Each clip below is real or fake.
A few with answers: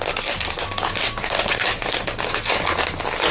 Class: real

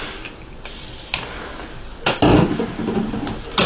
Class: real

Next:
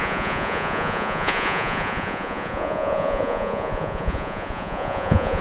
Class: fake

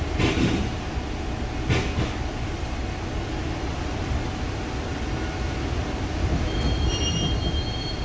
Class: fake